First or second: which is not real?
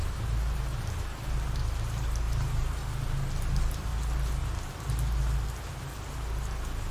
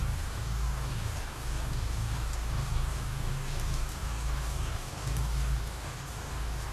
second